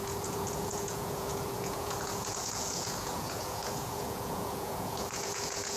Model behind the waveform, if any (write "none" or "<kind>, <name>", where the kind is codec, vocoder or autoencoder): vocoder, Vocos